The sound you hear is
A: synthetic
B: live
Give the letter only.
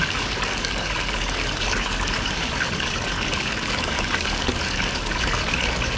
A